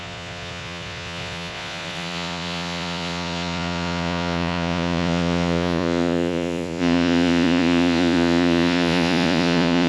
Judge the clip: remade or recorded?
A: remade